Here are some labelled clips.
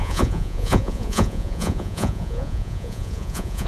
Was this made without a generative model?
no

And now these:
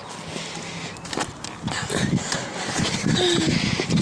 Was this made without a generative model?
yes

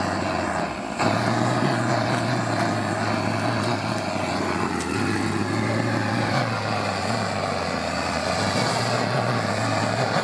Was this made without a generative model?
yes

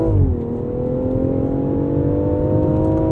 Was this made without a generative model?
yes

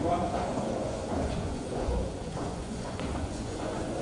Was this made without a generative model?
no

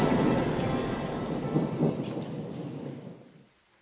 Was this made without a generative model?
yes